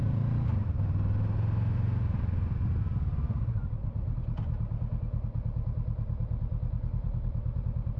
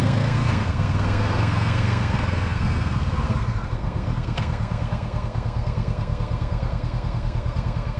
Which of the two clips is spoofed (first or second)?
second